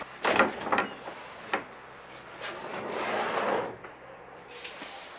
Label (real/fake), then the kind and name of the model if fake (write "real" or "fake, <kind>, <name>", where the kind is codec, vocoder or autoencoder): real